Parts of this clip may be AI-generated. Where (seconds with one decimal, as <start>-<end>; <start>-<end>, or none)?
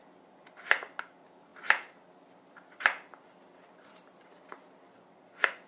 none